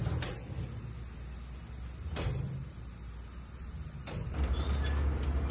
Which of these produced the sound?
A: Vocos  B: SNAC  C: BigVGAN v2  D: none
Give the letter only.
D